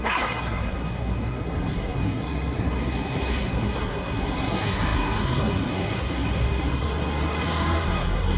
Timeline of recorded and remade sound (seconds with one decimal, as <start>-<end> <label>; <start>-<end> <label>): 0.0-8.4 remade